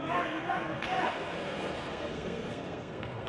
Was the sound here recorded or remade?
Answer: remade